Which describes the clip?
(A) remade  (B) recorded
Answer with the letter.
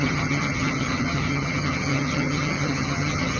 A